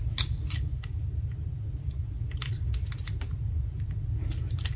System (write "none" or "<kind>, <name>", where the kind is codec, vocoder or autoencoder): none